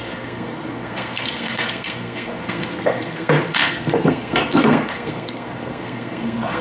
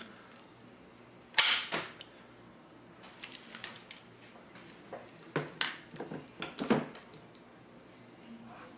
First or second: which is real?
second